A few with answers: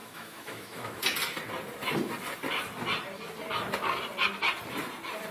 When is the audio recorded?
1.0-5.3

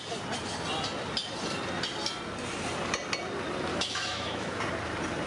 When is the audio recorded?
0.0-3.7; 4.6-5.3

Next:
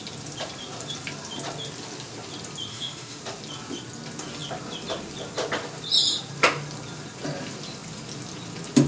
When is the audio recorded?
0.0-2.7; 3.2-8.9